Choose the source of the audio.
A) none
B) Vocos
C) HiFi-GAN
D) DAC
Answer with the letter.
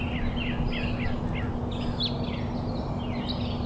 A